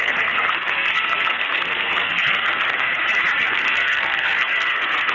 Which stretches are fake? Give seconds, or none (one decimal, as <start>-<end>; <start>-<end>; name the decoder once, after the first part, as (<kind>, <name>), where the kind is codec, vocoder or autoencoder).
0.0-2.9 (codec, SNAC); 3.4-5.1